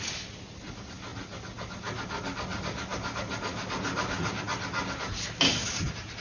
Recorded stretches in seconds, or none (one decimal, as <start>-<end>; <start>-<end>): 0.0-6.2